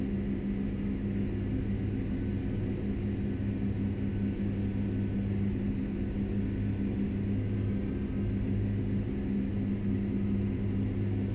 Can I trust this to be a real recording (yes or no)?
yes